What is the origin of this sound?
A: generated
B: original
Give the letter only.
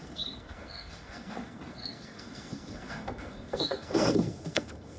A